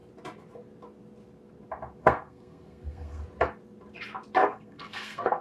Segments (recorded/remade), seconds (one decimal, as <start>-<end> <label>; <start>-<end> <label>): 0.0-2.0 recorded; 2.0-3.2 remade; 3.2-4.4 recorded; 4.4-5.4 remade